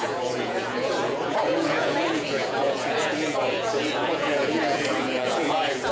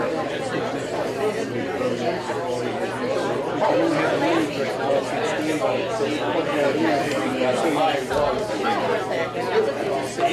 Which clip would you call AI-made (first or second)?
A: first